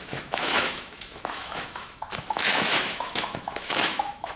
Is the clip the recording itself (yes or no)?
no